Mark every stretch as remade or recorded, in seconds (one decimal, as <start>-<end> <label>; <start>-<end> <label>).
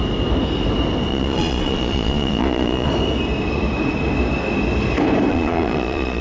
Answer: 0.0-1.1 recorded; 1.1-2.9 remade; 2.9-5.3 recorded; 5.3-6.2 remade